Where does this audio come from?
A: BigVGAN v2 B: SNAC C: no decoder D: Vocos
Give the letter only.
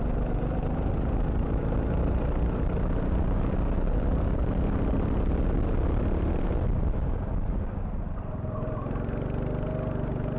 C